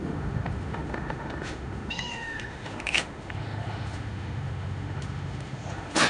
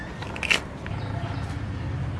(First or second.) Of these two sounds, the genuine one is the second